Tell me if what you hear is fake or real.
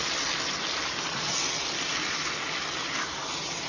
real